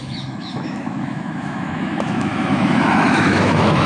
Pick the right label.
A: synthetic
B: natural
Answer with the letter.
A